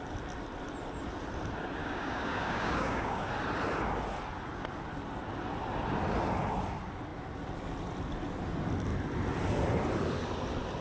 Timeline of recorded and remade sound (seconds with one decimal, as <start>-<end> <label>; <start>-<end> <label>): 0.0-1.8 recorded; 1.8-3.3 remade; 3.3-10.8 recorded